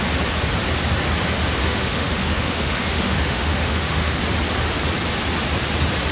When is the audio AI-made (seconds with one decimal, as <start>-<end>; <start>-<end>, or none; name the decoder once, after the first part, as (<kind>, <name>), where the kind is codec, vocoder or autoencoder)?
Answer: 1.6-4.2 (autoencoder, DAC-VAE)